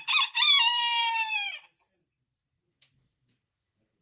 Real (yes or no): no